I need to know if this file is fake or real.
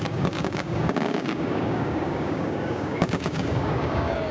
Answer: fake